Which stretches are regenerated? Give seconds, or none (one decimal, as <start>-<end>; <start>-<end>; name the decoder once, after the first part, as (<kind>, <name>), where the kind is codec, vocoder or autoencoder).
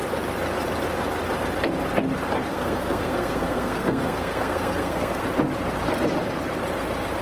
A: 2.5-5.2 (codec, SNAC)